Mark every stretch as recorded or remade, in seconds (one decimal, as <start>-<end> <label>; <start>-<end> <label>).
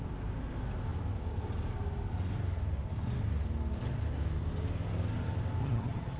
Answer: 0.0-5.6 recorded; 5.6-6.2 remade